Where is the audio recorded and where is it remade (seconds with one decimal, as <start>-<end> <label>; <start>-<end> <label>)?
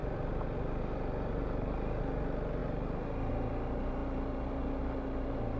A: 0.0-5.6 recorded